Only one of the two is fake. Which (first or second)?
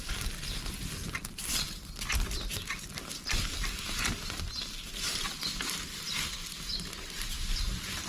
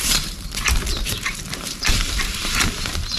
second